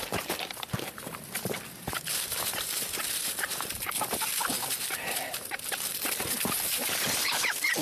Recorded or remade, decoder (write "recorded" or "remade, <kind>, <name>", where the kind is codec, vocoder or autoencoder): remade, vocoder, BigVGAN v2